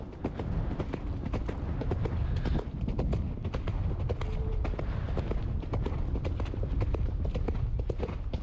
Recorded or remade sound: recorded